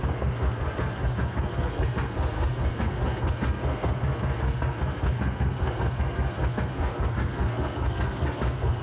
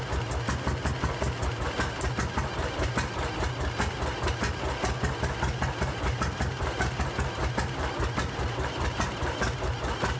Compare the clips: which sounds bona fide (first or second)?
second